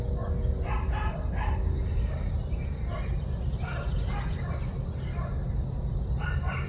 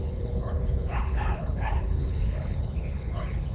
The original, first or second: first